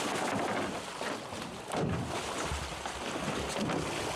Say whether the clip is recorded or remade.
recorded